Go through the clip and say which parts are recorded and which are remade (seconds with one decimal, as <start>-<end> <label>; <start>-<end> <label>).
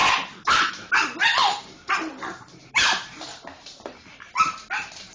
0.0-0.7 remade; 0.7-1.4 recorded; 1.4-4.3 remade; 4.3-5.1 recorded